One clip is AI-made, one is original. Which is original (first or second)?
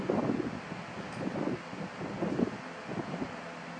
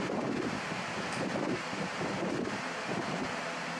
first